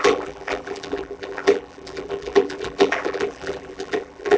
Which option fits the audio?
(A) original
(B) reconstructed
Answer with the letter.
B